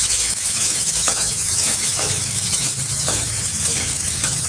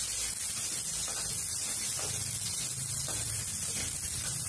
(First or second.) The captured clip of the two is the second